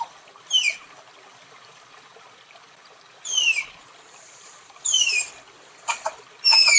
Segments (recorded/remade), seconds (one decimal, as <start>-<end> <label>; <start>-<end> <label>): 0.0-6.8 remade